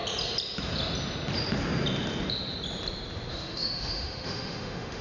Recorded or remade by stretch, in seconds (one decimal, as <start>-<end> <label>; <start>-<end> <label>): 0.0-3.3 recorded; 3.3-5.0 remade